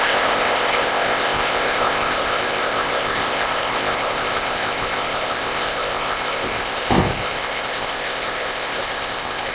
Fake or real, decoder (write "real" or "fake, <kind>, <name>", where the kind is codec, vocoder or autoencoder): fake, codec, ZipCodec